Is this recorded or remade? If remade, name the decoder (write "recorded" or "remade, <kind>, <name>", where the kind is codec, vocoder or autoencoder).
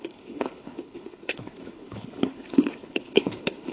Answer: remade, codec, HILCodec